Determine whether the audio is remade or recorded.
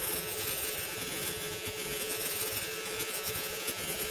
remade